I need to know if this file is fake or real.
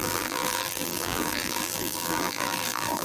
fake